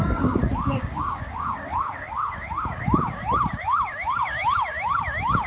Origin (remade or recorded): remade